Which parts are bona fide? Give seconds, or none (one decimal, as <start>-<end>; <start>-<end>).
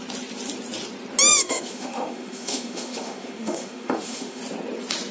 0.0-1.3; 4.4-5.1